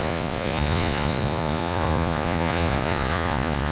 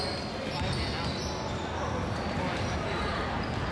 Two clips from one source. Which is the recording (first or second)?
second